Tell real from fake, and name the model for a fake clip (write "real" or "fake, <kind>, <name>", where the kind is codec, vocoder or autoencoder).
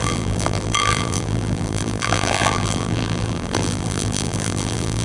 fake, vocoder, BigVGAN v2